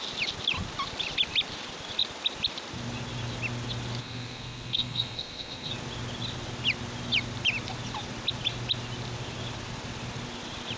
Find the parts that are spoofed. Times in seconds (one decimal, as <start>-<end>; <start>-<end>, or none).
4.0-5.7